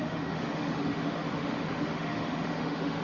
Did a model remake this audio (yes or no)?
yes